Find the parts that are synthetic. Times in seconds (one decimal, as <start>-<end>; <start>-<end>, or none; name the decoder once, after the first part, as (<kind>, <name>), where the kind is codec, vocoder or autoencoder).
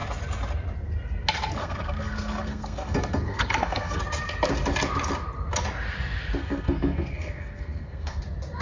1.6-4.0 (codec, SNAC); 6.4-8.2